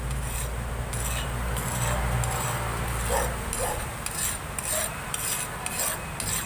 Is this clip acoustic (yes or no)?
yes